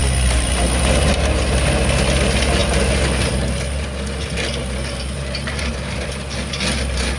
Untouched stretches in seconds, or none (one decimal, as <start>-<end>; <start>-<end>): 0.0-7.2